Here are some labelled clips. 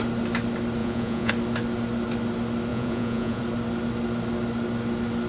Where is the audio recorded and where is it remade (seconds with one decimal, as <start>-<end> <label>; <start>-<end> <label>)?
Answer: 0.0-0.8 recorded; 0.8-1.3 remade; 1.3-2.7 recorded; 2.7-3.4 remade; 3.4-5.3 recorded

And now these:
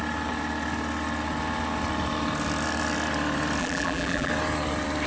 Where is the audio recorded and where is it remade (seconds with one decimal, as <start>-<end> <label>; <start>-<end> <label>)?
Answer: 0.0-3.6 recorded; 3.6-4.3 remade; 4.3-5.1 recorded

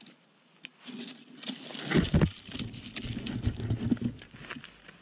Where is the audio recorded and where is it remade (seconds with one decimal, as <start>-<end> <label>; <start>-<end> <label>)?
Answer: 0.0-5.0 recorded

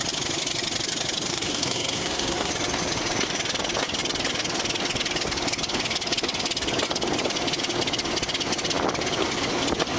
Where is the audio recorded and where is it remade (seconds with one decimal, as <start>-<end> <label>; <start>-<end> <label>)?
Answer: 0.0-1.3 recorded; 1.3-2.5 remade; 2.5-10.0 recorded

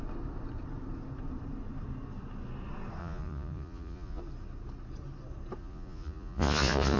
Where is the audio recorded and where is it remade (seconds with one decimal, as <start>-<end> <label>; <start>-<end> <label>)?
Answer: 0.0-3.0 recorded; 3.0-4.2 remade; 4.2-5.6 recorded; 5.6-7.0 remade

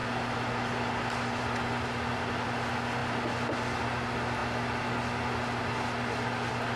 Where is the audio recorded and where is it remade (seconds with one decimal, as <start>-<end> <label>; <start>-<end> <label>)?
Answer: 0.0-6.8 recorded

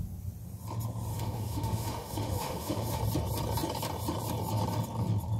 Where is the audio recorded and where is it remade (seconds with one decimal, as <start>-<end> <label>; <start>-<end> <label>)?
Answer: 0.0-1.1 recorded; 1.1-3.0 remade; 3.0-5.4 recorded

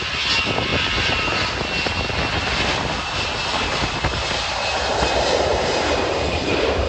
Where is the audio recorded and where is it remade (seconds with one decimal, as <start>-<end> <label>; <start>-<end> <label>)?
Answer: 0.0-0.7 recorded; 0.7-1.6 remade; 1.6-5.5 recorded; 5.5-6.9 remade